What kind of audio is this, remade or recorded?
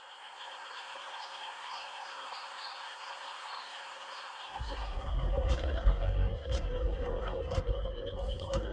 remade